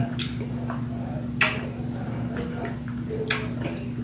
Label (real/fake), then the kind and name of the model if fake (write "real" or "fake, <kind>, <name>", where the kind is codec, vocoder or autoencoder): real